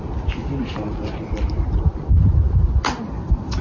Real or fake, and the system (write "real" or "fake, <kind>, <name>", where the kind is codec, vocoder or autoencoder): real